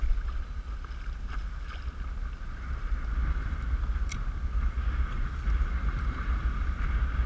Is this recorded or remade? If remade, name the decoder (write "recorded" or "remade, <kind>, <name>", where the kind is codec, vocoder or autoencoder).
recorded